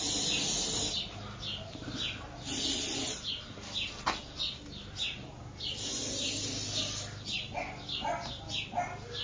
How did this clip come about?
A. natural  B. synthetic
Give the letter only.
A